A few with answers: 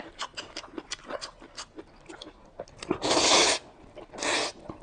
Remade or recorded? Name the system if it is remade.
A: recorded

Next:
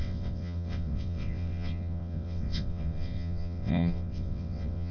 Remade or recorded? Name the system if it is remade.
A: remade, vocoder, WaveNeXt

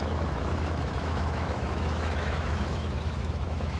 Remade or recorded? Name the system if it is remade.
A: remade, autoencoder, DAC-VAE